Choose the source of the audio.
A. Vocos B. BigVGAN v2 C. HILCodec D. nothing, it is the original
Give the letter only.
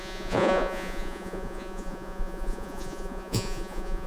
A